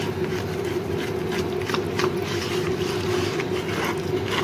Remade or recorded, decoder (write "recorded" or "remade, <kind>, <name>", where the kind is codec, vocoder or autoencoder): recorded